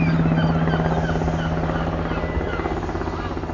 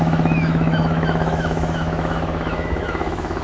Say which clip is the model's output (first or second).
second